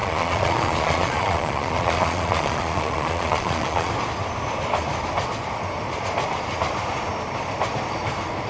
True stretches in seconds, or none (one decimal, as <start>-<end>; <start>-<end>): 3.9-8.5